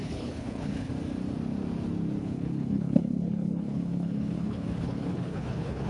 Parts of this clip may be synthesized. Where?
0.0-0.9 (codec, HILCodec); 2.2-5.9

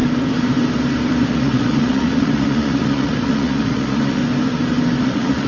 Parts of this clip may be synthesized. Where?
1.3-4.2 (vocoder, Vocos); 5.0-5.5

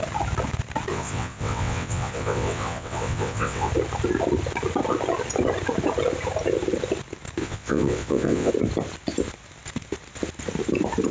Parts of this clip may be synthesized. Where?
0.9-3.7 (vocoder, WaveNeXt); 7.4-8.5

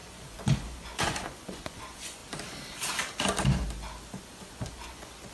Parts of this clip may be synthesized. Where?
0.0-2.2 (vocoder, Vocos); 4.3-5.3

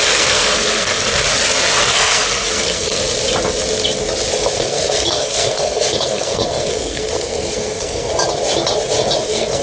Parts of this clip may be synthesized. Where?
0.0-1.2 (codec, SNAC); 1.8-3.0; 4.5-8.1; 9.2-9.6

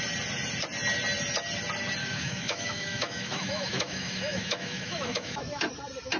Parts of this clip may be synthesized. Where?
2.0-5.7 (autoencoder, DAC-VAE)

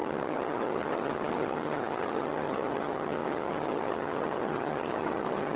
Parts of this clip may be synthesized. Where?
0.0-5.6 (vocoder, HiFi-GAN)